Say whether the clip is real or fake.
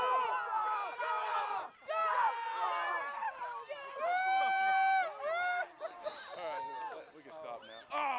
real